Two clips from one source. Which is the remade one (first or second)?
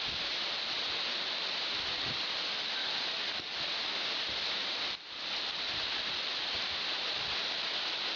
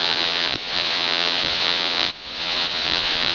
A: second